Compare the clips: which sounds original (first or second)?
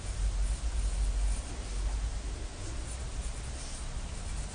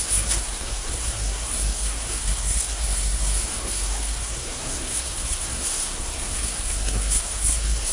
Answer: first